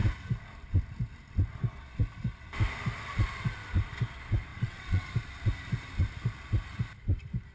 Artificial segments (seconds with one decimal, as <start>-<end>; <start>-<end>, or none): 4.5-5.1